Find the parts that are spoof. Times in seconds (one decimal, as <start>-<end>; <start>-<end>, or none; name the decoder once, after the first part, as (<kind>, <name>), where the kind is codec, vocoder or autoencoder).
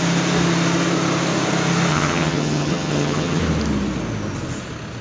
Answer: 1.9-3.4 (vocoder, HiFi-GAN)